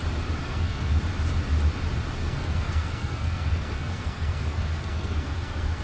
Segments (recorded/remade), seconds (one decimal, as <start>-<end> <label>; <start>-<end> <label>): 0.0-0.4 recorded; 0.4-1.0 remade; 1.0-2.2 recorded; 2.2-5.8 remade